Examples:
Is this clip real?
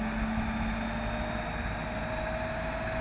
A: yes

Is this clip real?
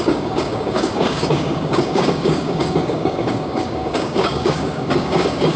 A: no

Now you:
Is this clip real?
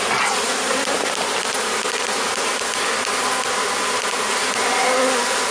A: yes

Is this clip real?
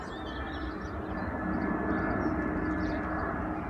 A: yes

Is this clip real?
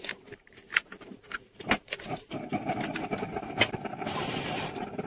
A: no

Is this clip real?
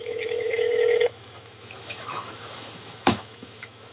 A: no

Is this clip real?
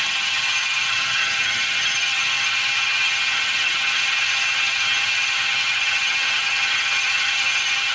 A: no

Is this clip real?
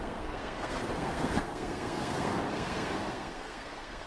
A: no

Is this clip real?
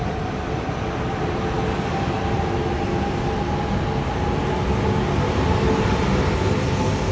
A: yes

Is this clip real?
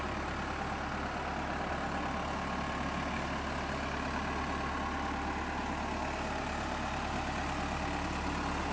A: yes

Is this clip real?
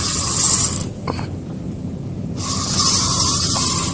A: yes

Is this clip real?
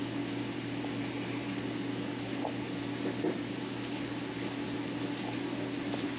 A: yes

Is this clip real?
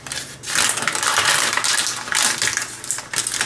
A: yes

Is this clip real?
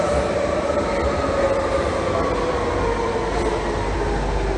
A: yes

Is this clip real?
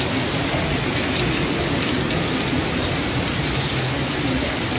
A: yes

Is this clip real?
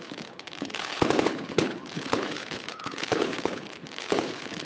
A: no